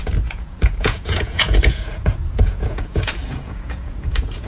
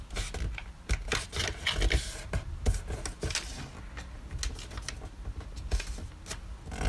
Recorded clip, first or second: second